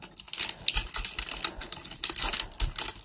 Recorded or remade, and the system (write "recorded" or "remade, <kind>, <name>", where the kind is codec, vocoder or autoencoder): recorded